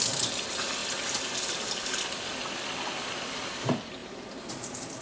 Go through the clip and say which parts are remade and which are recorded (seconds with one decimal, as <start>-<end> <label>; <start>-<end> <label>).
0.0-5.0 recorded

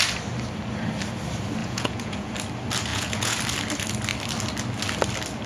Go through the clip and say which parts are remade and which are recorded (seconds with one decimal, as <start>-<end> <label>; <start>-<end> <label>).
0.0-1.6 recorded; 1.6-2.3 remade; 2.3-2.9 recorded; 2.9-3.4 remade; 3.4-5.5 recorded

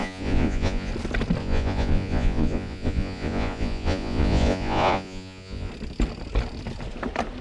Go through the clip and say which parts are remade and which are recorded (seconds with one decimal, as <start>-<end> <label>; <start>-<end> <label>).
0.0-0.9 remade; 0.9-1.4 recorded; 1.4-5.7 remade; 5.7-7.4 recorded

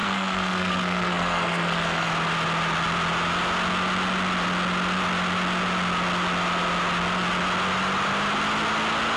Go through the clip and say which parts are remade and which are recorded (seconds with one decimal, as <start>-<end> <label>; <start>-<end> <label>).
0.0-2.1 remade; 2.1-9.2 recorded

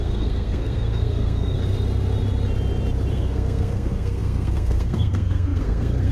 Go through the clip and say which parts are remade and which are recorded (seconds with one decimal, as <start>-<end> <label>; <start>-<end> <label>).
0.0-1.6 remade; 1.6-3.1 recorded; 3.1-6.1 remade